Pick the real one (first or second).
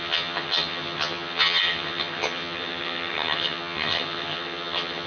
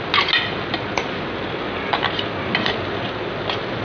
second